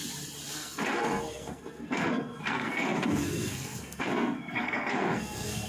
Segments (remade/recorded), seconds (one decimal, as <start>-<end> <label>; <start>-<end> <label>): 0.0-0.5 recorded; 0.5-5.7 remade